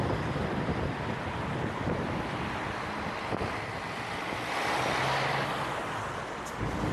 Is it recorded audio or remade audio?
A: recorded